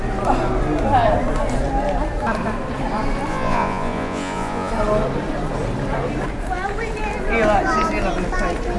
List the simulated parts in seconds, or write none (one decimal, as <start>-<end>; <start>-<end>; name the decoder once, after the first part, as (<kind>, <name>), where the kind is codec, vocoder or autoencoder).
3.3-4.7 (vocoder, Vocos)